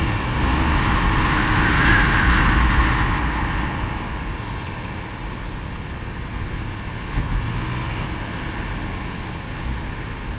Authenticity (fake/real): real